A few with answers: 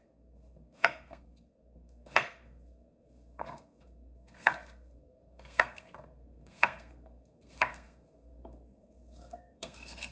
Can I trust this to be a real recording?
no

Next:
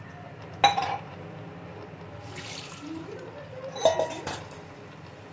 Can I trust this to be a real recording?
yes